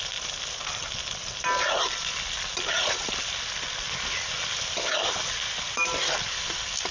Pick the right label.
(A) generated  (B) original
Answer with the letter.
B